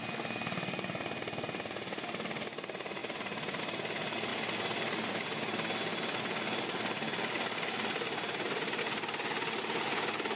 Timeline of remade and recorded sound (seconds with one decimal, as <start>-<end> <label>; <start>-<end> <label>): 0.0-10.4 recorded